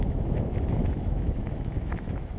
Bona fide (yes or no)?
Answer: no